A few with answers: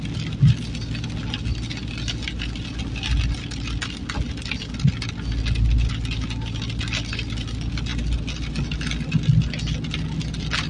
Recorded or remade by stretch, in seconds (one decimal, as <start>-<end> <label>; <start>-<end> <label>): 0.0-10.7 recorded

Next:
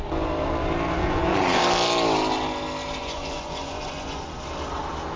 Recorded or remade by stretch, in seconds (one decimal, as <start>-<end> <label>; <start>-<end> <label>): 0.0-1.0 recorded; 1.0-1.6 remade; 1.6-3.0 recorded; 3.0-4.3 remade; 4.3-5.2 recorded

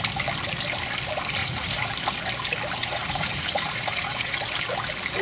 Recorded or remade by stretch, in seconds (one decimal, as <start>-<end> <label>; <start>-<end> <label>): 0.0-1.4 recorded; 1.4-1.9 remade; 1.9-2.8 recorded; 2.8-4.5 remade; 4.5-5.2 recorded

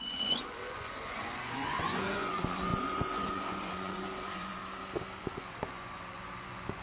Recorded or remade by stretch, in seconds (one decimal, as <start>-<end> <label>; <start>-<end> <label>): 0.0-4.6 remade; 4.6-5.2 recorded; 5.2-6.8 remade

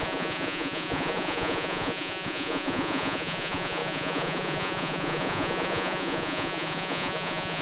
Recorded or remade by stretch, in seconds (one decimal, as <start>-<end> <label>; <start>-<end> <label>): 0.0-7.6 remade

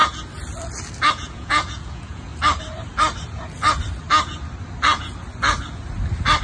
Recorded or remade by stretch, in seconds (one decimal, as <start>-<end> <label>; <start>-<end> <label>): 0.0-1.1 recorded; 1.1-2.3 remade; 2.3-6.4 recorded

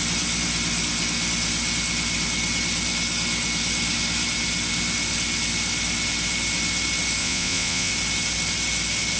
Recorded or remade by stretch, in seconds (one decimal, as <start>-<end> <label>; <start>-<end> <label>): 0.0-7.2 recorded; 7.2-7.9 remade; 7.9-9.2 recorded